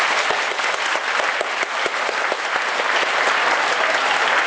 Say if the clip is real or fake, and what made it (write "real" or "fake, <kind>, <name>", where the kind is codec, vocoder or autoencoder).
real